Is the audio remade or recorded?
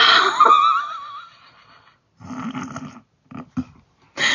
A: recorded